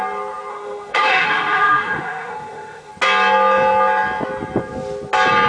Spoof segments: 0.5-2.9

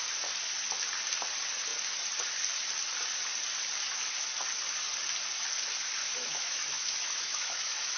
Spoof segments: 6.0-8.0

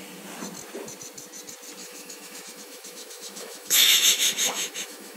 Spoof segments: 1.8-5.2

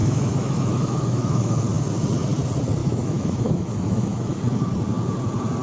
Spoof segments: 0.0-1.6; 2.8-4.4

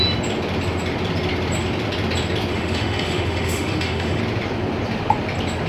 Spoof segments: 2.5-4.2

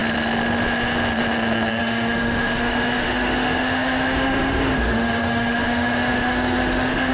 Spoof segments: 1.7-7.1

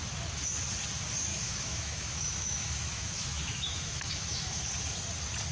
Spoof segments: 1.3-4.6

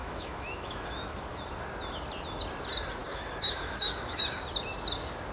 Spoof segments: 0.0-1.4; 3.0-4.2